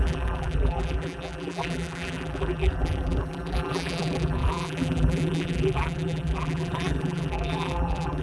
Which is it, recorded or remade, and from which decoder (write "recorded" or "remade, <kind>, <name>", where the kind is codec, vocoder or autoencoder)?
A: remade, vocoder, BigVGAN v2